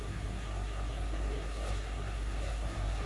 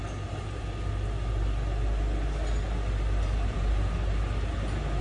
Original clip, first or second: second